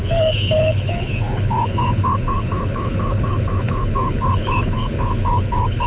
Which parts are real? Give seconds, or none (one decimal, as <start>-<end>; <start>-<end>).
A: none